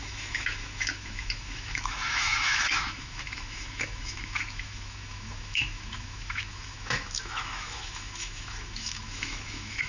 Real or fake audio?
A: fake